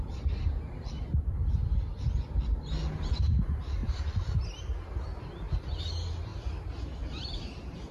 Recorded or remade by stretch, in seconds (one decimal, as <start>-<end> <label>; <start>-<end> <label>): 0.0-7.9 recorded